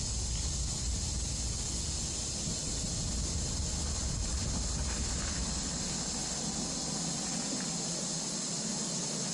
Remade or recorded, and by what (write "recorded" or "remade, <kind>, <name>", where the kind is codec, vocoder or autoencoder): recorded